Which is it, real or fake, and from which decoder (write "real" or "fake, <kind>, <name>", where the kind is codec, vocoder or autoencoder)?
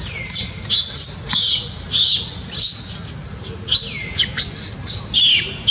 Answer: real